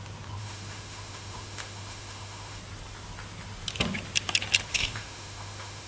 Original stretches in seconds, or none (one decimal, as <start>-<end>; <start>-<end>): 0.0-0.4; 2.6-4.7